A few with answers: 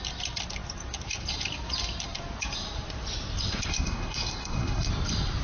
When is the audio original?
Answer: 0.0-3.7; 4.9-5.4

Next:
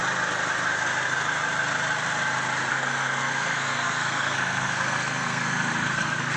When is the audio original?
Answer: 0.0-2.7

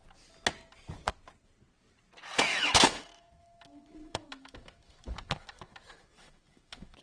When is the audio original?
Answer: 0.0-2.5

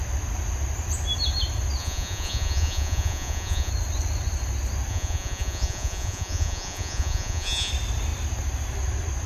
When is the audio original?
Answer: 0.0-1.8; 3.7-4.9; 7.7-9.3

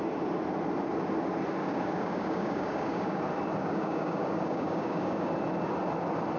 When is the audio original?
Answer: 0.0-1.6; 3.2-3.6; 5.3-6.4

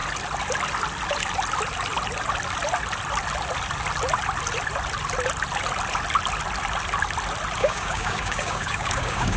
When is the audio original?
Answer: 0.0-7.6

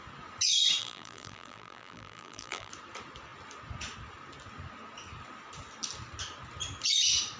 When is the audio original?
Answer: 0.0-0.8; 2.7-7.4